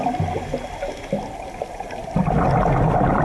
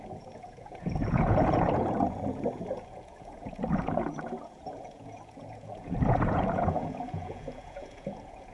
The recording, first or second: first